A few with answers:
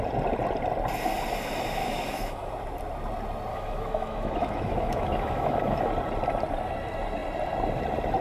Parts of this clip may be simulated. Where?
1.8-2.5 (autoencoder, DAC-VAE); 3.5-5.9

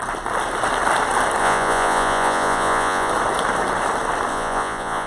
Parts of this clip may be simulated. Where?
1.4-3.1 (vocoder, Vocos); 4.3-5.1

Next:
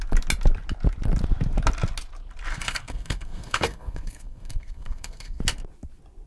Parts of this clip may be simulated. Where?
2.5-5.4 (codec, SNAC)

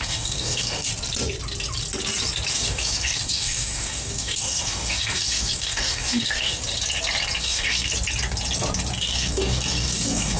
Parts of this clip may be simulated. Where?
0.0-0.9 (codec, DAC); 2.5-6.6; 7.4-7.9; 9.0-10.4

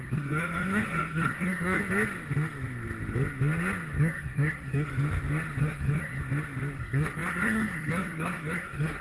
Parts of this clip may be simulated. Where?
0.0-1.8 (codec, SNAC); 4.0-4.9; 5.6-6.2; 6.7-9.0